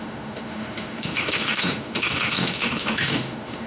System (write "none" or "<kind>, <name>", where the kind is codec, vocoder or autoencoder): autoencoder, DAC-VAE